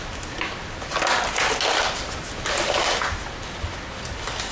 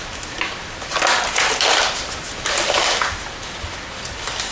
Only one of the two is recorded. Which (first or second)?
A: first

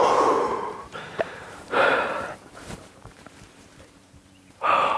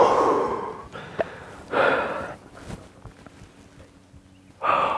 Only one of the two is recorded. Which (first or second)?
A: second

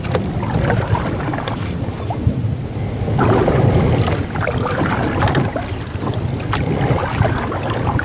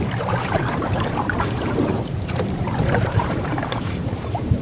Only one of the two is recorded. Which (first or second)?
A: first